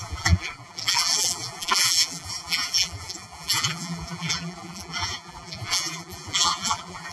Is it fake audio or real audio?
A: fake